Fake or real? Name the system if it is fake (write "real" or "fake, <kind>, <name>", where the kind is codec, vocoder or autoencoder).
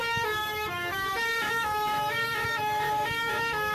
fake, autoencoder, DAC-VAE